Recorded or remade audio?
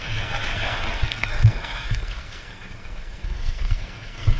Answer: remade